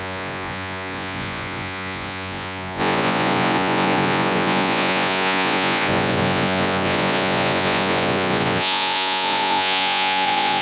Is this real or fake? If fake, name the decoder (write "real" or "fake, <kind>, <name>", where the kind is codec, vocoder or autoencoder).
fake, vocoder, Vocos